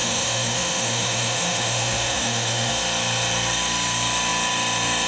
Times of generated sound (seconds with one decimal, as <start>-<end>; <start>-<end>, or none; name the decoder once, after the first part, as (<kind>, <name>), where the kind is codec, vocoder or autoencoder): 0.0-2.7 (autoencoder, DAC-VAE)